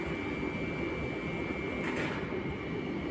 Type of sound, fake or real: real